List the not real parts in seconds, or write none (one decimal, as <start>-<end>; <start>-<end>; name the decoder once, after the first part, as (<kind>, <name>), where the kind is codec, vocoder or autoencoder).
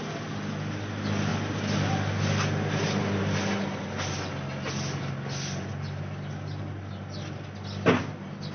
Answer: none